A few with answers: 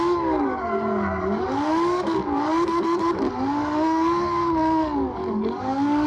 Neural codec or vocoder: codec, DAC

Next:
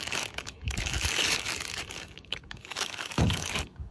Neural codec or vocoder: codec, DAC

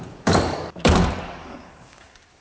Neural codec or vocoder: codec, DAC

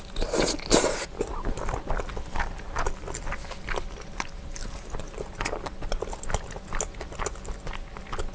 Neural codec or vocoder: none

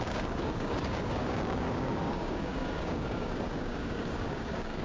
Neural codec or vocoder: codec, DAC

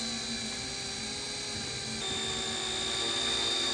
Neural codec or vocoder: none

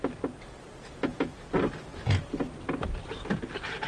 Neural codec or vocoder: none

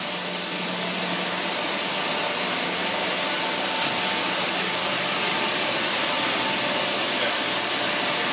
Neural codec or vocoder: none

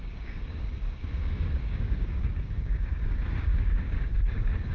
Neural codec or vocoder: codec, DAC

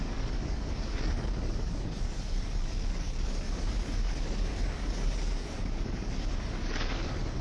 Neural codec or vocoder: codec, DAC